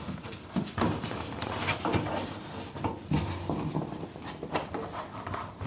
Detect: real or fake real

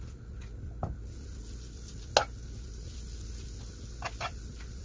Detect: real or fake real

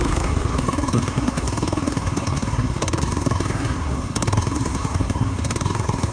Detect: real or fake fake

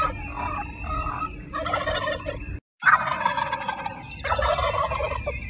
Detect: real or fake real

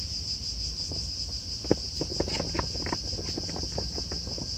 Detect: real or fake real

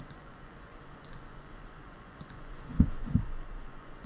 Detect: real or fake fake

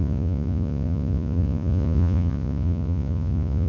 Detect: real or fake fake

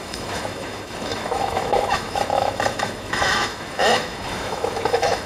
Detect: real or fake fake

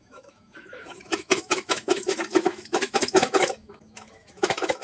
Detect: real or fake fake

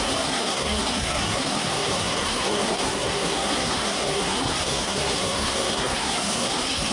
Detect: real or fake fake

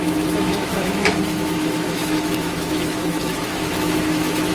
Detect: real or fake fake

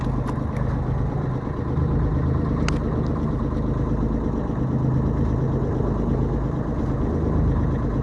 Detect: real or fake real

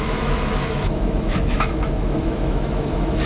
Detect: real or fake fake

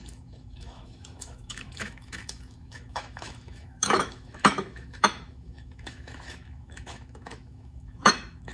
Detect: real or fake fake